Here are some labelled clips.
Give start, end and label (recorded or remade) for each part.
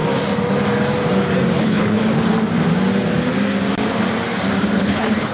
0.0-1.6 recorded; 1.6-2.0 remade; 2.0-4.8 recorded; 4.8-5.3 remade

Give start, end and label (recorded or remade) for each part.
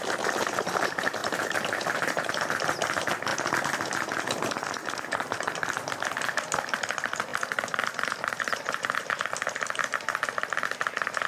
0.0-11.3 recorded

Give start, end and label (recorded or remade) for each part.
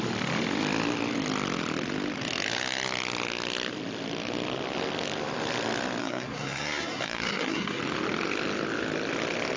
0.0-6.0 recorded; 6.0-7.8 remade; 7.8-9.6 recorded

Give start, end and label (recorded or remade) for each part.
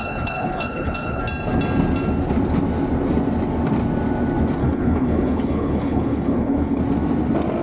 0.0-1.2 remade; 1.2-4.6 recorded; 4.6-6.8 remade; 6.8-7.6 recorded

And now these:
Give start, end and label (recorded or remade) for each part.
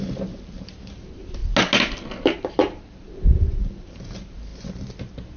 0.0-1.4 remade; 1.4-2.2 recorded; 2.2-4.5 remade; 4.5-5.4 recorded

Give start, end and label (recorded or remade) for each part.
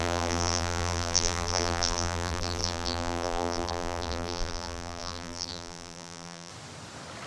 0.0-6.5 remade; 6.5-7.3 recorded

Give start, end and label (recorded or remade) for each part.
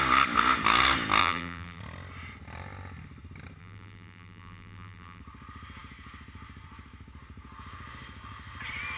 0.0-1.2 recorded; 1.2-1.8 remade; 1.8-3.6 recorded; 3.6-5.2 remade; 5.2-9.0 recorded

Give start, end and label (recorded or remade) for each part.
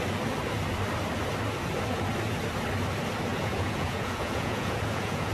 0.0-3.3 recorded; 3.3-5.3 remade